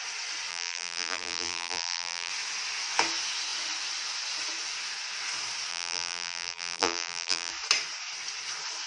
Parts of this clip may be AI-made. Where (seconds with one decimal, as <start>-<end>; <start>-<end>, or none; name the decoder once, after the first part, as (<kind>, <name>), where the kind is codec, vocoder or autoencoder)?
0.5-2.3 (vocoder, BigVGAN v2); 5.7-7.5